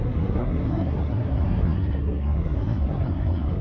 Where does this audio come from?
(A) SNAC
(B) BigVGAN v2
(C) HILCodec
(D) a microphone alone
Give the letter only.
A